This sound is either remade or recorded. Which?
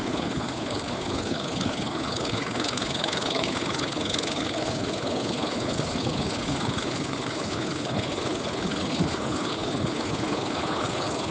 remade